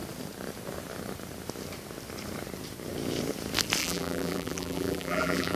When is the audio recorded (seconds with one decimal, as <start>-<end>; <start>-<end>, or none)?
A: 0.0-3.8